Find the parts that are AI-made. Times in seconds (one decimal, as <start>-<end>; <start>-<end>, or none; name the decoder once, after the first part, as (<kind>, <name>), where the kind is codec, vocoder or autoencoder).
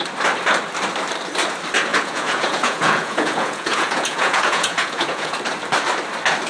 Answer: 1.9-5.4 (vocoder, Vocos)